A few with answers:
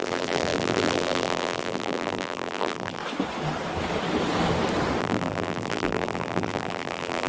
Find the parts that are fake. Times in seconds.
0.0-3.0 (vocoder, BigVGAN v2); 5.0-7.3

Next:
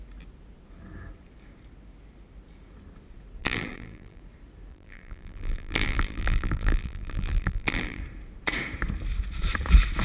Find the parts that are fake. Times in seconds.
3.4-4.2 (vocoder, BigVGAN v2); 4.7-8.0

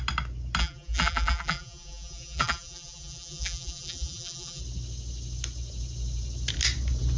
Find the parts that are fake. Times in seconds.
0.6-4.6 (vocoder, BigVGAN v2)